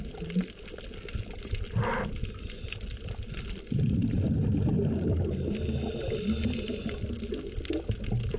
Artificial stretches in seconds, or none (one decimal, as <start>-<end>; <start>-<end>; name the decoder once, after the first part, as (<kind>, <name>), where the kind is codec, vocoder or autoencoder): none